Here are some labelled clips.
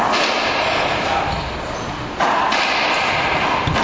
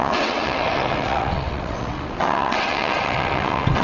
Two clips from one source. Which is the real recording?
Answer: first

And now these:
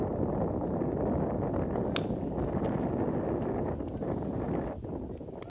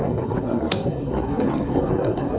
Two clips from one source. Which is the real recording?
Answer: first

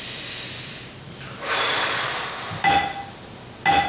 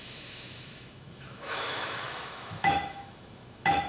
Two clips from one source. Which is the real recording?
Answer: first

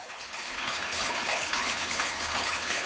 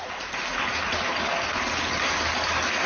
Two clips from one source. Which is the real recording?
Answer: second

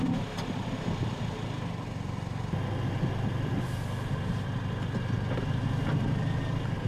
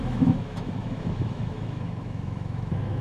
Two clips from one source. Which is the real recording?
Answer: first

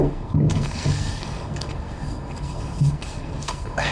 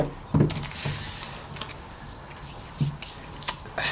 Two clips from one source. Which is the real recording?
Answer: second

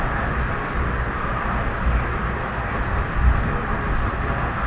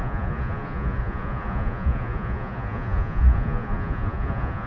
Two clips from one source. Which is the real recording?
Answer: first